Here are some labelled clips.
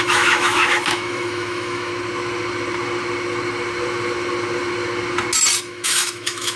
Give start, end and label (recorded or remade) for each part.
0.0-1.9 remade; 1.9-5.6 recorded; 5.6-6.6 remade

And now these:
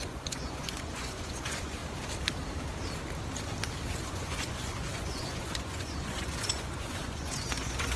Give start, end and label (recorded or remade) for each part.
0.0-1.8 remade; 1.8-4.1 recorded; 4.1-8.0 remade

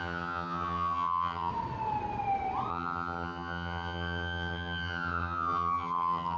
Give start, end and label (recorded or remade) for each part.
0.0-1.5 remade; 1.5-2.7 recorded; 2.7-6.4 remade

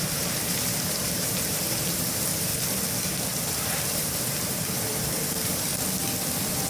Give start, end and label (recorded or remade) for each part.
0.0-2.5 remade; 2.5-3.5 recorded; 3.5-5.7 remade; 5.7-6.3 recorded; 6.3-6.7 remade